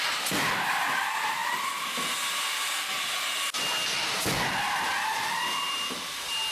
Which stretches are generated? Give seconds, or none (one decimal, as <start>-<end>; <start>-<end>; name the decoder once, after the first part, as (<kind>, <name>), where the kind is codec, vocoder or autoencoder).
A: none